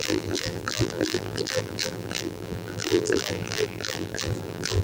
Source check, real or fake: fake